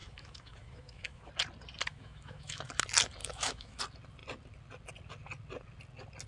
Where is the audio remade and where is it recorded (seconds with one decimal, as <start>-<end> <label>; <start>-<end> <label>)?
0.0-1.3 remade; 1.3-1.9 recorded; 1.9-2.7 remade; 2.7-3.2 recorded; 3.2-3.8 remade; 3.8-6.3 recorded